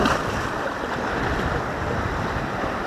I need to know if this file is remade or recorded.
recorded